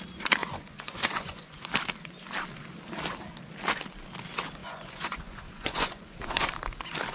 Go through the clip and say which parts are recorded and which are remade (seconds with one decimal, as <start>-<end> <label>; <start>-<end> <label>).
0.0-0.4 recorded; 0.4-1.7 remade; 1.7-4.6 recorded; 4.6-6.5 remade; 6.5-7.1 recorded